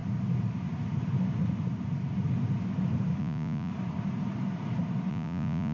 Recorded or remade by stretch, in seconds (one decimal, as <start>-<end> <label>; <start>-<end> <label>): 0.0-3.2 recorded; 3.2-3.7 remade; 3.7-5.1 recorded; 5.1-5.7 remade